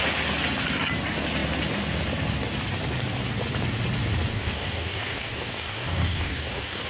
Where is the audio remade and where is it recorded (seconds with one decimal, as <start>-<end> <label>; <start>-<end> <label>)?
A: 0.0-4.3 recorded; 4.3-6.9 remade